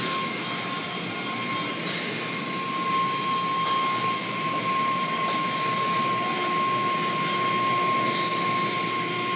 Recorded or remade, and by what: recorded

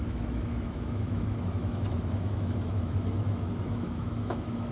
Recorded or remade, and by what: remade, autoencoder, DAC-VAE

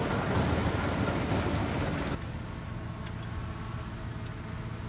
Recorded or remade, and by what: recorded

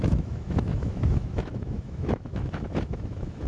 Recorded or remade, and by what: remade, autoencoder, DAC-VAE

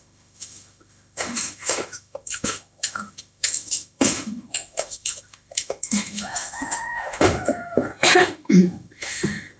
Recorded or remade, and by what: remade, autoencoder, DAC-VAE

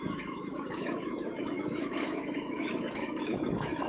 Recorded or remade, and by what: remade, autoencoder, DAC-VAE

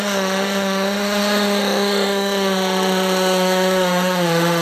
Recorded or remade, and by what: remade, autoencoder, DAC-VAE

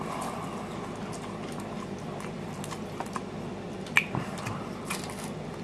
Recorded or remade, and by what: recorded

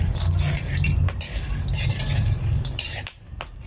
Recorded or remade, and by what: recorded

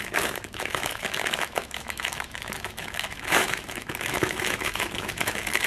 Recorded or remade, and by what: remade, autoencoder, DAC-VAE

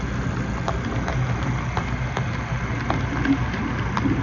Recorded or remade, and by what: recorded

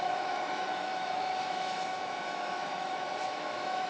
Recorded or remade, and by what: remade, autoencoder, DAC-VAE